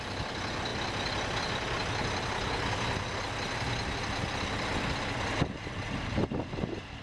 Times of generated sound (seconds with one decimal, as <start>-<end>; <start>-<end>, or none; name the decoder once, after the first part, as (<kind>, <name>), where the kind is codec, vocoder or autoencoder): none